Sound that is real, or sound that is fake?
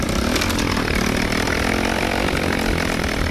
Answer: real